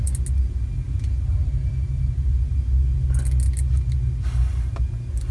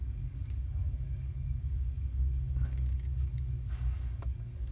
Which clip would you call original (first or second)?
first